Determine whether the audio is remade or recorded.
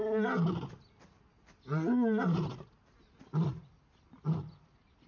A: recorded